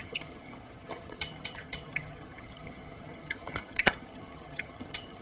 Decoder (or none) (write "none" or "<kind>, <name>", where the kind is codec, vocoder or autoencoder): vocoder, HiFi-GAN